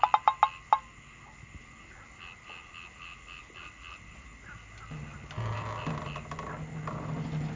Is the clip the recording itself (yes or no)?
yes